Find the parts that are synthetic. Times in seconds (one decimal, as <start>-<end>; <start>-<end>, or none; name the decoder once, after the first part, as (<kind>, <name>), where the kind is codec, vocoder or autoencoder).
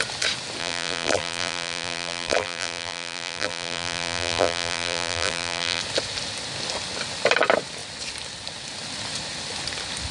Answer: 0.6-5.8 (vocoder, BigVGAN v2)